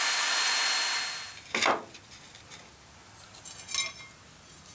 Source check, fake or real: real